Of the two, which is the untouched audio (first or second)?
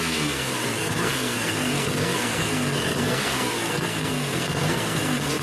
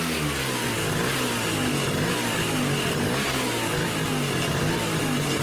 second